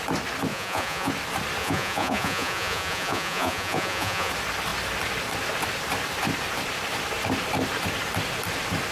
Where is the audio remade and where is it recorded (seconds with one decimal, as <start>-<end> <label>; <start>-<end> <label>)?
0.0-0.5 recorded; 0.5-1.1 remade; 1.1-1.6 recorded; 1.6-4.3 remade; 4.3-8.9 recorded